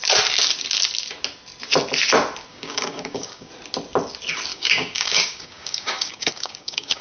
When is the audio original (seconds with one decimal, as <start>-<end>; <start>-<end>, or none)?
0.0-2.5; 3.5-4.5